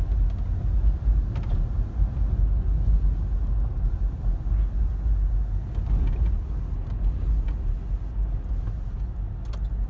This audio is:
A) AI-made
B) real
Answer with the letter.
B